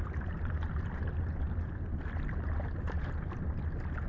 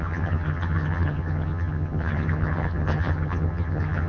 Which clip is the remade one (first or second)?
second